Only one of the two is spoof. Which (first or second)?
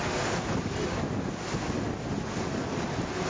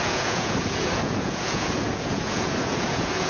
second